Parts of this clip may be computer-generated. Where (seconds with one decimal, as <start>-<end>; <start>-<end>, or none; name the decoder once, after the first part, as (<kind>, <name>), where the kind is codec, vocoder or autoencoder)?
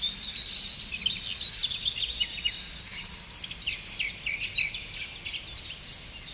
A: none